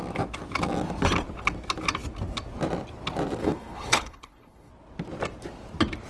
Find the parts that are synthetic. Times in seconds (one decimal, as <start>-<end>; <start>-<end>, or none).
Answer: 3.4-4.7